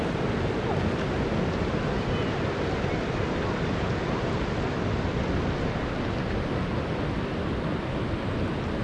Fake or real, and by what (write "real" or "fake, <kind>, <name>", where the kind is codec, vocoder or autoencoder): real